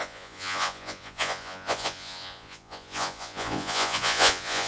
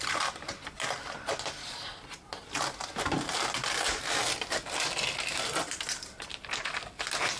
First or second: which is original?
second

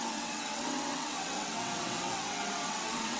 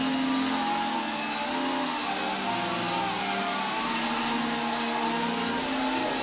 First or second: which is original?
second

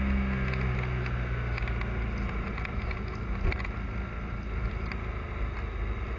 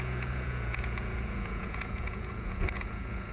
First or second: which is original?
first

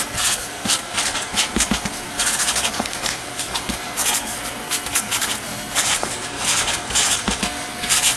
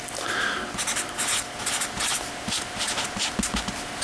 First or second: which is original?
second